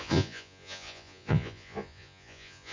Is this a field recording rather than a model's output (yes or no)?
no